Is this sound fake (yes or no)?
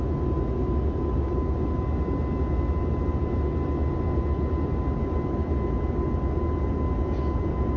no